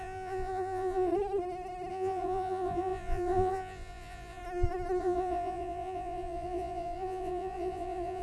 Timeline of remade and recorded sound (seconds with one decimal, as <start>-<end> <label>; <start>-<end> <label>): 0.0-1.1 remade; 1.1-1.9 recorded; 1.9-4.4 remade; 4.4-5.0 recorded; 5.0-8.2 remade